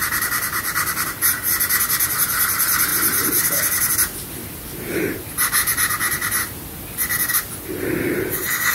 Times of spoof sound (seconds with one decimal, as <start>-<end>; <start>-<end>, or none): none